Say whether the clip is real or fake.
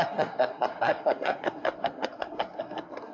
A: fake